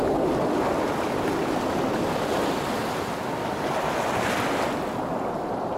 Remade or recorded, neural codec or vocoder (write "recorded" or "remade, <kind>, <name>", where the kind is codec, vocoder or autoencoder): recorded